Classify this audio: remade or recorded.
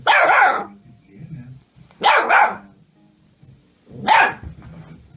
recorded